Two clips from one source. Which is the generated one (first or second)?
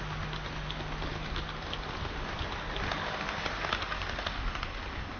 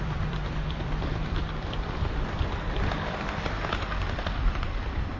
second